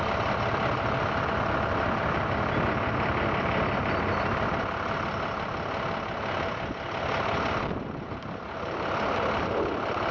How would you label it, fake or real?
real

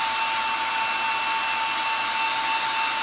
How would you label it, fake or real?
real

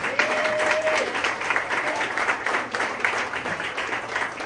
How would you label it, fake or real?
fake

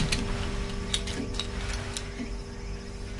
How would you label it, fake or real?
real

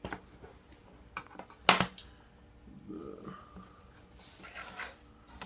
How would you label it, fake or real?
real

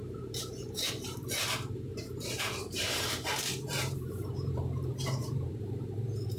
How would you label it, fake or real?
fake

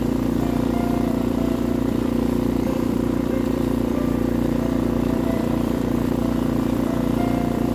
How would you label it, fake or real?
fake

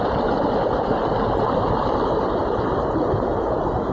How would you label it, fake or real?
real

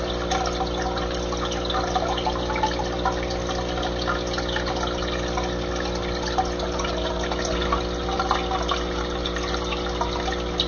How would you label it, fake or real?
real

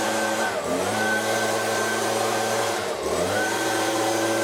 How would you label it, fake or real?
fake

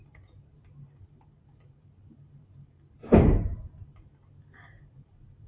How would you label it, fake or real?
fake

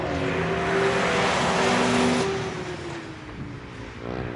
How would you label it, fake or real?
real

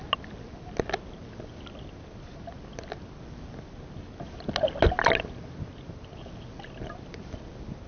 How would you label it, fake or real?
real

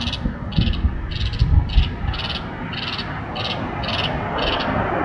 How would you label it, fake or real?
real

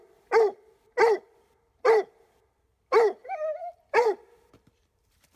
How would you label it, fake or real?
fake